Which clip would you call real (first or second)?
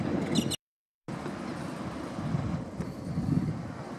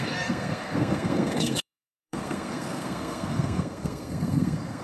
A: first